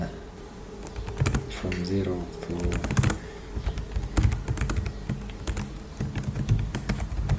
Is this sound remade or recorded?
recorded